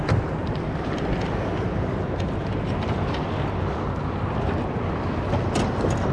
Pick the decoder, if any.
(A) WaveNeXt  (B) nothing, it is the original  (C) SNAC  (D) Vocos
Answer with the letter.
B